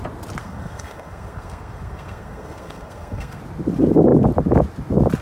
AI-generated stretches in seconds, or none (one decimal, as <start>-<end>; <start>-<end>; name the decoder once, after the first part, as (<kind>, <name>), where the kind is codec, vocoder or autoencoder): 0.4-3.4 (codec, SNAC)